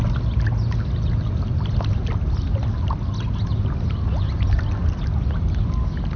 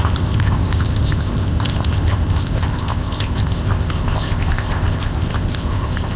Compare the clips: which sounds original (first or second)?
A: first